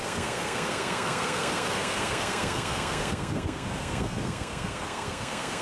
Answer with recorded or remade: remade